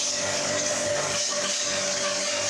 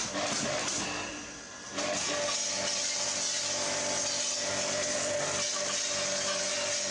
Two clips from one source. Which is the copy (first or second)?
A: first